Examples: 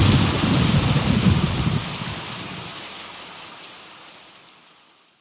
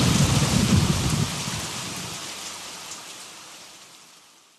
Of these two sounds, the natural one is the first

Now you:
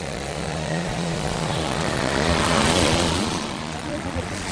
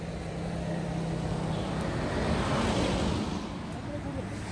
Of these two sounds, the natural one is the second